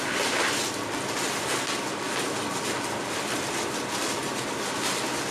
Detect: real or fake real